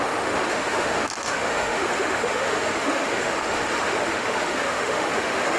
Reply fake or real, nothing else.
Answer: fake